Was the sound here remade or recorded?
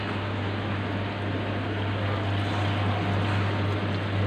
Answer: recorded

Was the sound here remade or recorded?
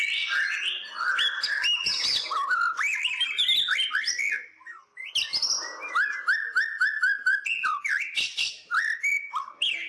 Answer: recorded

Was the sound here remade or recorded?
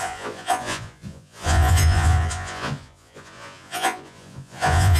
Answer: remade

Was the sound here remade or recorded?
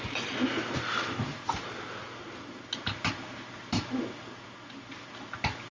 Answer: recorded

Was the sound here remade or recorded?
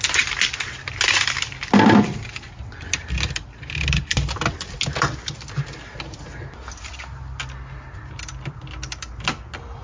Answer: recorded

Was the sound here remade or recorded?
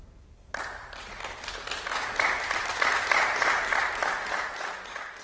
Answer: recorded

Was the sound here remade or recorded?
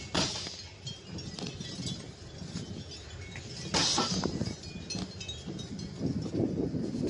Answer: recorded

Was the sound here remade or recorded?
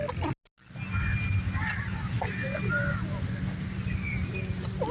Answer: recorded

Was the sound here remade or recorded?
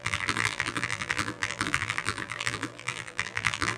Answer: remade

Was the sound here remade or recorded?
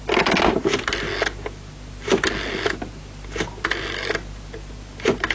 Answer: recorded